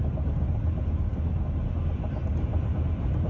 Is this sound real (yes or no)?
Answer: yes